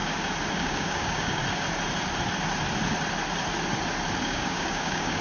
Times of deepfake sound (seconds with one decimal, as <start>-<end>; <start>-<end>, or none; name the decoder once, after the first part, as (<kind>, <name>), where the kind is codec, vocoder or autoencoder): 0.5-1.4 (codec, DAC); 4.2-5.2